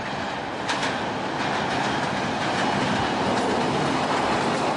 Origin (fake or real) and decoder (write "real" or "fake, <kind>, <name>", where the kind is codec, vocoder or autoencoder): real